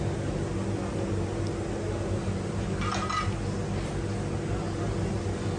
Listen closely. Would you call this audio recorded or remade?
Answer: recorded